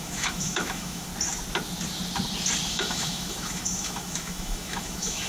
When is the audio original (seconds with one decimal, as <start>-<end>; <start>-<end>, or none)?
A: 1.1-2.7